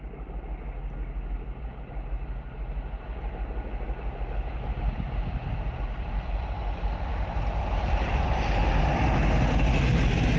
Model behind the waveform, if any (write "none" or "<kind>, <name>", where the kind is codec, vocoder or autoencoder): none